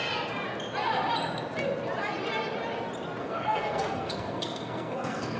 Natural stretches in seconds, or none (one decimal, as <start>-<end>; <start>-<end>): 0.0-3.2